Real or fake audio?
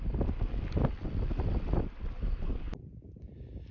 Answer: real